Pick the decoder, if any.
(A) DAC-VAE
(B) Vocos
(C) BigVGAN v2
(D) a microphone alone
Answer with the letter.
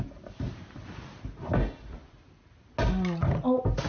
D